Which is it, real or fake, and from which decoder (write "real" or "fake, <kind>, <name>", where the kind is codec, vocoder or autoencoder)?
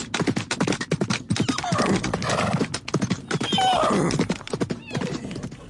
real